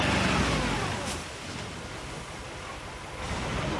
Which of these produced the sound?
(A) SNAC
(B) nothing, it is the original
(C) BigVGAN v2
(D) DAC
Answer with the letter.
B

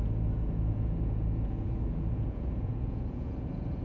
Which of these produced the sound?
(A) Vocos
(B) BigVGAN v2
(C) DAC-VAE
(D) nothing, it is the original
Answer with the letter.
A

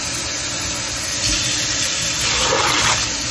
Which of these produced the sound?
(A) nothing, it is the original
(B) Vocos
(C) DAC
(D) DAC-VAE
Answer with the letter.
A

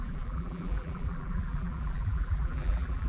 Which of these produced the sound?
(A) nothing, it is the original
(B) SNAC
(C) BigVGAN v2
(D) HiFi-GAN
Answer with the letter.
C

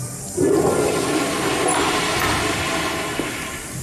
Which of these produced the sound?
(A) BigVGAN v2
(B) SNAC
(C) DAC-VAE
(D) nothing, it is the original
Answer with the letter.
D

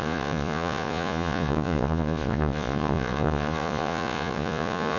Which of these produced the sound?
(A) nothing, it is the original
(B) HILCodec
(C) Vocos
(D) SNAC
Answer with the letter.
C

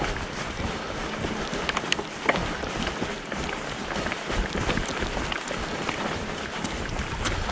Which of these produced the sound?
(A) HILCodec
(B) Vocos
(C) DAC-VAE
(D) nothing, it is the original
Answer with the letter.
D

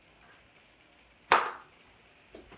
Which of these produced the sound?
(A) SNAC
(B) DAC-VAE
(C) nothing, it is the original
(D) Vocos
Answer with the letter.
C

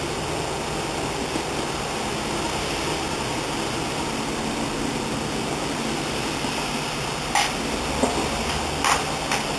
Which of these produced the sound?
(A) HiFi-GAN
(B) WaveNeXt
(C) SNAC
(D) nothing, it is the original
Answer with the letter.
D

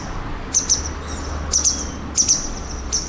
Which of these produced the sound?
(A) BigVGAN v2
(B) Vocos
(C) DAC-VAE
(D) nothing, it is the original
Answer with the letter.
D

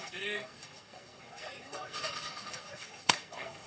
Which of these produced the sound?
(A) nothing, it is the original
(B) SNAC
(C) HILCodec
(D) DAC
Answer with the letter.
B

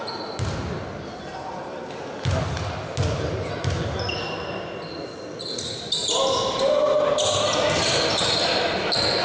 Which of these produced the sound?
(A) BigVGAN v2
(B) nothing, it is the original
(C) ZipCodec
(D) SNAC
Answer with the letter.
B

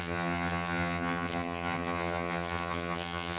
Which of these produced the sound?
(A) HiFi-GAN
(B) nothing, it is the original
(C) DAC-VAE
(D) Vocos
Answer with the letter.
A